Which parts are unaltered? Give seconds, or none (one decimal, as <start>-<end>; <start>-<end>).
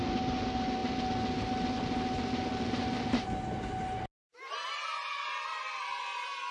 0.0-6.5